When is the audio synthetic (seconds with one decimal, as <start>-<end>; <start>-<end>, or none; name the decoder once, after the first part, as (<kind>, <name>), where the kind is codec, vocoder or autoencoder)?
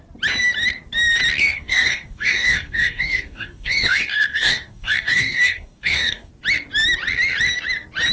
1.4-6.3 (codec, DAC)